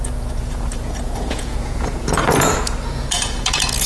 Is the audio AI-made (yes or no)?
yes